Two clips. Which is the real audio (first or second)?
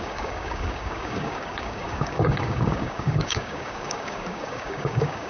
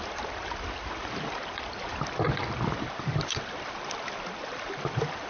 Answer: second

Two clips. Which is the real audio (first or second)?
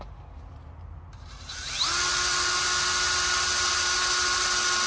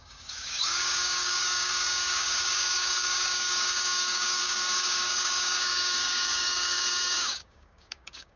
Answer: first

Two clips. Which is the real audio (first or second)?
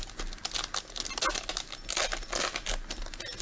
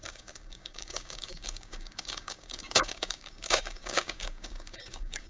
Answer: first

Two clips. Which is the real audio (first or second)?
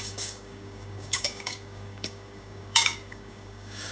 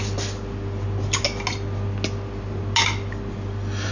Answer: second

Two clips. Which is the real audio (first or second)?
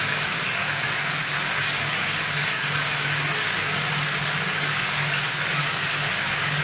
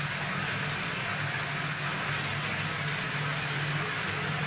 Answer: second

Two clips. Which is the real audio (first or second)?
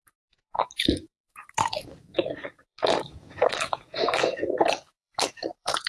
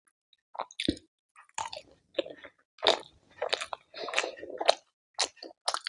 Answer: second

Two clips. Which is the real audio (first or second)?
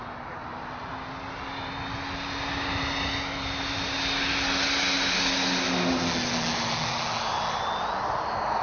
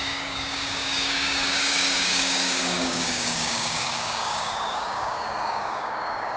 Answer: first